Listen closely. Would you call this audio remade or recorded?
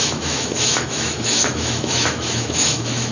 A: remade